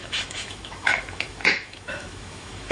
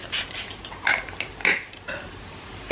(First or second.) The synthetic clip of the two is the first